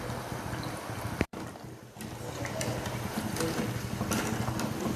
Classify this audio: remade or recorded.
recorded